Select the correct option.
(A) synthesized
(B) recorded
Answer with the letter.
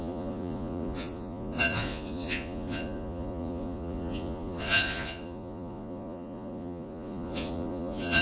A